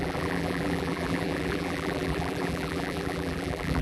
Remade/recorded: remade